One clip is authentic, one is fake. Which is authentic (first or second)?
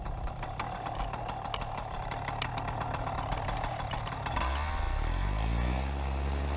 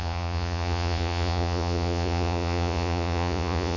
first